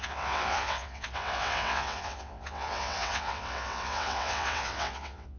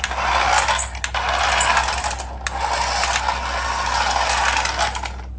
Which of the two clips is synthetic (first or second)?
first